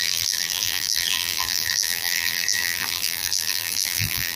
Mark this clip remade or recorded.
remade